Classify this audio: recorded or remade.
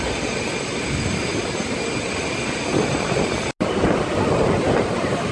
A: recorded